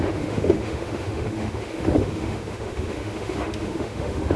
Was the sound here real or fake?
fake